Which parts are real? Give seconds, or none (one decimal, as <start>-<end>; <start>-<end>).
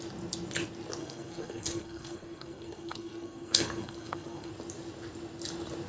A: 0.0-1.0; 4.5-5.9